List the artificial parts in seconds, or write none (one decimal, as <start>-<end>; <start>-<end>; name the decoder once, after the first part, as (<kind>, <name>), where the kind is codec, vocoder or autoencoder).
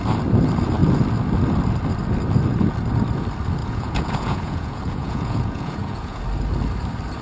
3.6-6.2 (vocoder, Vocos)